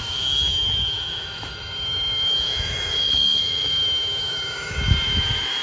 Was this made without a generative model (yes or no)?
no